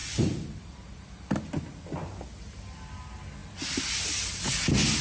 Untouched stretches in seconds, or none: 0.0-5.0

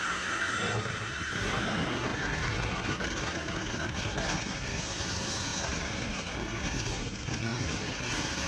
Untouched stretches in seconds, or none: none

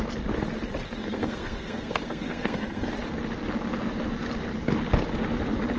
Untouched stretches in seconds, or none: 0.0-1.0; 2.9-5.8

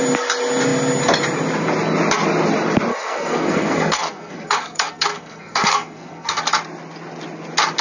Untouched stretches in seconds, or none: 0.0-2.9; 6.4-7.8

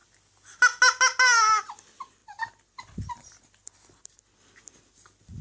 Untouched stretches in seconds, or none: 0.0-5.4

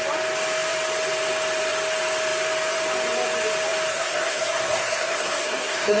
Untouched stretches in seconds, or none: 0.0-3.9

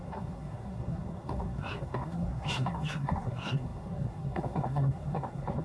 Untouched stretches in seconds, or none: none

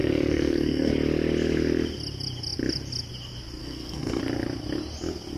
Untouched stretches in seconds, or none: 0.9-3.6; 4.2-5.4